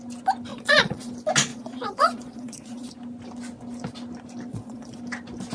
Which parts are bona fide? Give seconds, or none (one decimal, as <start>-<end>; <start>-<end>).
0.0-0.5; 1.1-1.5; 2.9-4.5; 5.0-5.5